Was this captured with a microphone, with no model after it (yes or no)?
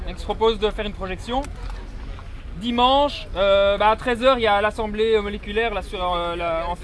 yes